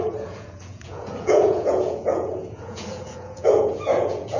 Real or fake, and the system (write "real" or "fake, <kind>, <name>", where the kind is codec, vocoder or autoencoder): fake, vocoder, Vocos